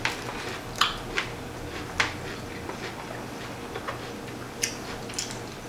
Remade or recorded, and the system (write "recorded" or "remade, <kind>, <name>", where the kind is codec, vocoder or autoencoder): recorded